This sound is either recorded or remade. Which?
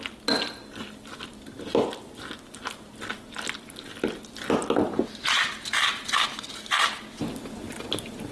recorded